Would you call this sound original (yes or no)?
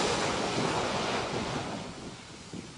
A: no